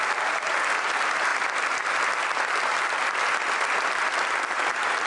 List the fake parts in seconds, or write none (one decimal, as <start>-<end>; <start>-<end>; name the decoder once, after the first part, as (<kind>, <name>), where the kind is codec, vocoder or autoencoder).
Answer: none